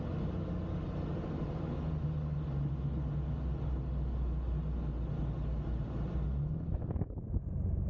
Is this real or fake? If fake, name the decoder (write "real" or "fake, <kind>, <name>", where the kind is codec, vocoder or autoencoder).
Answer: real